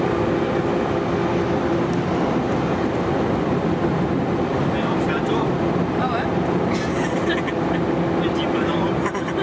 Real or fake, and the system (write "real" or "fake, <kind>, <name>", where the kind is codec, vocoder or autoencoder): real